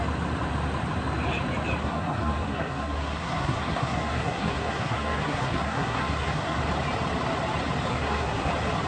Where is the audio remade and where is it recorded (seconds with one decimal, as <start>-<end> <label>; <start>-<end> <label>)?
0.0-1.8 recorded; 1.8-6.6 remade; 6.6-7.9 recorded; 7.9-8.5 remade; 8.5-8.9 recorded

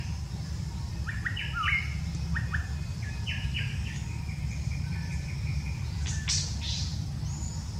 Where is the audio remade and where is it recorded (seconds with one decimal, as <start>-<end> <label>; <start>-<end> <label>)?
0.0-3.5 recorded; 3.5-4.2 remade; 4.2-7.8 recorded